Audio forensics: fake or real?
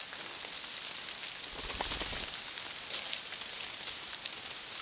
real